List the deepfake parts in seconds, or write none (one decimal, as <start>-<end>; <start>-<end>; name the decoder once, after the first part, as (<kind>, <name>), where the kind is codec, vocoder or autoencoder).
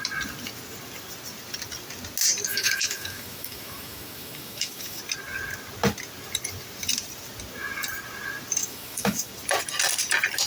2.5-5.0 (autoencoder, DAC-VAE); 8.6-9.3